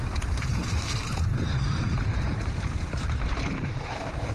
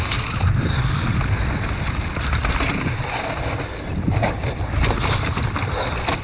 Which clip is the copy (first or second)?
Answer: first